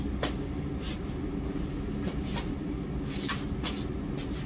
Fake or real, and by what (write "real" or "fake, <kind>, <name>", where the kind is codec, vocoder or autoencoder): real